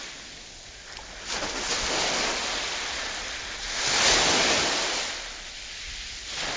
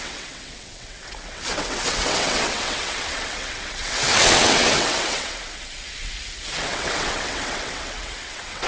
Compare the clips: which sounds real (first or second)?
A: first